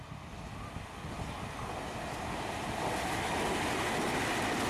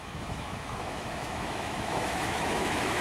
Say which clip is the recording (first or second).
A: first